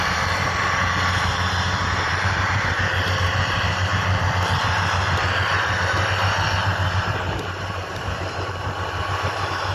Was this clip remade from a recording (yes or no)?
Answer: yes